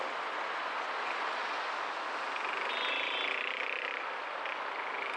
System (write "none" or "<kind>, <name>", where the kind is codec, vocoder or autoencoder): none